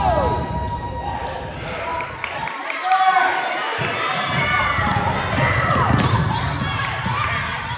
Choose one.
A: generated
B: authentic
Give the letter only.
B